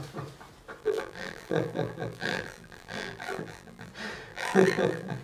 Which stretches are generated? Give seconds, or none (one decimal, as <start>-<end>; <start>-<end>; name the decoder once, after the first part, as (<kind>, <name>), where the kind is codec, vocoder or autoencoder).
0.8-3.9 (vocoder, BigVGAN v2); 4.3-5.2